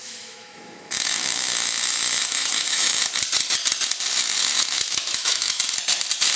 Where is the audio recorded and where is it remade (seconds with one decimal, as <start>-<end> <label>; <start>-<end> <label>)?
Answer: 0.0-3.0 remade; 3.0-4.4 recorded; 4.4-5.6 remade; 5.6-6.4 recorded